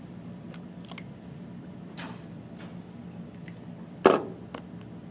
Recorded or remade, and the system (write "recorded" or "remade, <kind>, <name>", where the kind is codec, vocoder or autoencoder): recorded